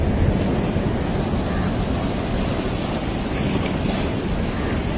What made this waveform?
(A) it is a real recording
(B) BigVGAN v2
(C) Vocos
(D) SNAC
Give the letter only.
A